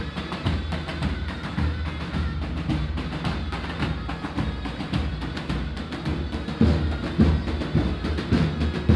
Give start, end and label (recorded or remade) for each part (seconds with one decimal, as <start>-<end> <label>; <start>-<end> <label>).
0.0-9.0 recorded